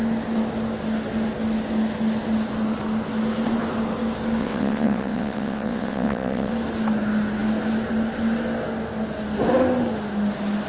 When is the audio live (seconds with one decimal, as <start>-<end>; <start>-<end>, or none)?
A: 0.0-4.4; 6.5-10.7